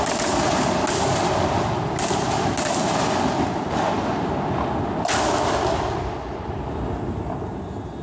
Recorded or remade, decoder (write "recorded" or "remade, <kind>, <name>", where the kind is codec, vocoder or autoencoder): recorded